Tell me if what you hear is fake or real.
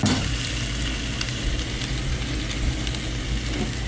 real